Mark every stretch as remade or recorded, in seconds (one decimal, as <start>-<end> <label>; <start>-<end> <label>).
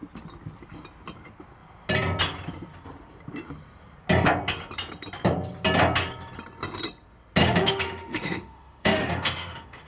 0.0-7.4 recorded; 7.4-9.9 remade